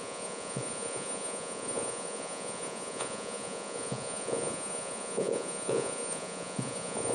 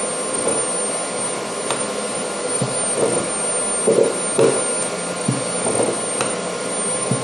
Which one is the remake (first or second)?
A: first